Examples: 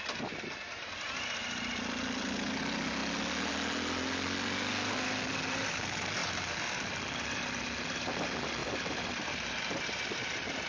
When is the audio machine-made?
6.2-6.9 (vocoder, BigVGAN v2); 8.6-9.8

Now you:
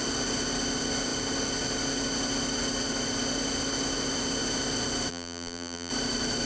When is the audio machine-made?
5.1-5.9 (vocoder, BigVGAN v2)

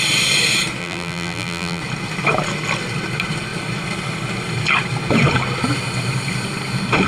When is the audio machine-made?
0.8-1.8 (vocoder, BigVGAN v2)

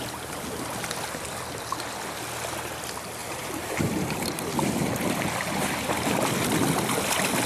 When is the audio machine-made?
3.2-3.8 (vocoder, BigVGAN v2)

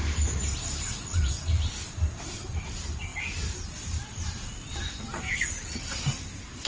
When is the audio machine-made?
0.0-3.1 (vocoder, BigVGAN v2); 5.3-6.7

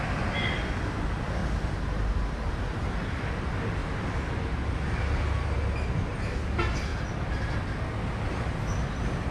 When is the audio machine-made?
1.4-2.6 (vocoder, BigVGAN v2); 3.8-4.8